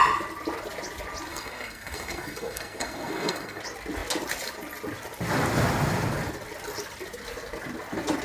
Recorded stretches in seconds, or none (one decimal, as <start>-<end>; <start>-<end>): 0.0-1.3; 3.6-8.2